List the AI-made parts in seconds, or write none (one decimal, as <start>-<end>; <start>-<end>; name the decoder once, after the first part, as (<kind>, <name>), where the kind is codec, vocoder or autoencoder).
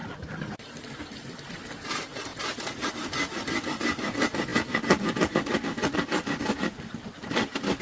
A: 2.3-2.9 (vocoder, BigVGAN v2)